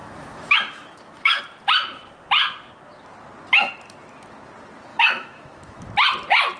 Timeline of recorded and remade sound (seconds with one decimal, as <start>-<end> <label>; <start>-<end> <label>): 0.0-1.4 remade; 1.4-4.9 recorded; 4.9-5.8 remade; 5.8-6.6 recorded

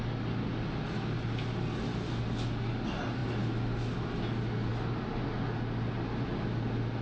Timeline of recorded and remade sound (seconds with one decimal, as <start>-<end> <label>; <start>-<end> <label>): 0.0-7.0 recorded

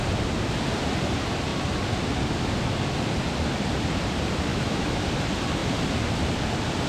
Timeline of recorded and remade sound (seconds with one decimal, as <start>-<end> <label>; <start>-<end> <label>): 0.0-4.5 recorded; 4.5-5.0 remade; 5.0-6.9 recorded

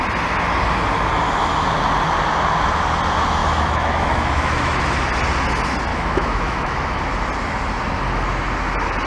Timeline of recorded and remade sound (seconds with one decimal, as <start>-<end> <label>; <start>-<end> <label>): 0.0-3.4 recorded; 3.4-4.8 remade; 4.8-5.9 recorded; 5.9-7.0 remade; 7.0-9.1 recorded

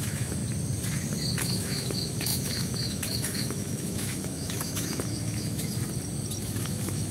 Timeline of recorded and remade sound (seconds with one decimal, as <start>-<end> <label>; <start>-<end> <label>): 0.0-0.4 remade; 0.4-1.4 recorded; 1.4-5.7 remade; 5.7-6.4 recorded; 6.4-7.1 remade

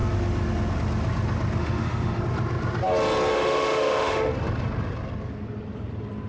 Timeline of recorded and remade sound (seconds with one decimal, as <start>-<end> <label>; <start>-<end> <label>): 0.0-1.6 recorded; 1.6-2.2 remade; 2.2-3.3 recorded; 3.3-4.3 remade; 4.3-6.3 recorded

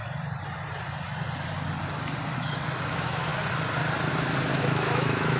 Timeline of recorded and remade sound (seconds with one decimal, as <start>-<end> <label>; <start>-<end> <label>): 0.0-2.9 recorded; 2.9-3.3 remade; 3.3-4.6 recorded; 4.6-5.4 remade